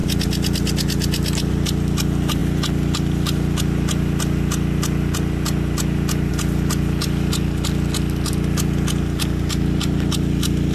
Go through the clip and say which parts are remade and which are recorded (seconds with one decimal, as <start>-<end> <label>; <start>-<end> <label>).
0.0-10.7 recorded